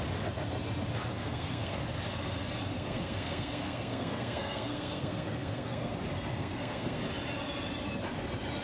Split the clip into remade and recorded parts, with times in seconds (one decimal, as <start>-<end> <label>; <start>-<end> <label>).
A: 0.0-1.2 recorded; 1.2-1.8 remade; 1.8-2.7 recorded; 2.7-5.9 remade; 5.9-6.4 recorded; 6.4-7.0 remade; 7.0-8.6 recorded